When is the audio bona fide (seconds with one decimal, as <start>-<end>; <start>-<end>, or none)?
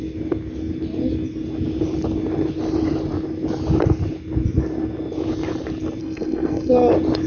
0.0-6.0; 6.7-7.3